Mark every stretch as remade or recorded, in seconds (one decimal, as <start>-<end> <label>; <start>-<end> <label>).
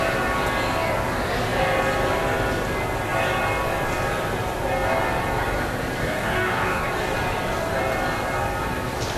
0.0-6.0 recorded; 6.0-6.9 remade; 6.9-9.2 recorded